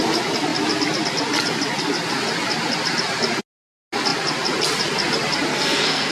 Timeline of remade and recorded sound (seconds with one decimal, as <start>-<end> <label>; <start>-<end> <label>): 0.0-5.5 recorded; 5.5-6.1 remade